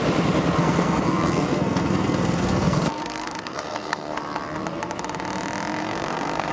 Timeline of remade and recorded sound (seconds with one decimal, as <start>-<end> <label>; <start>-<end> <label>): 0.0-0.6 recorded; 0.6-4.2 remade; 4.2-5.8 recorded; 5.8-6.5 remade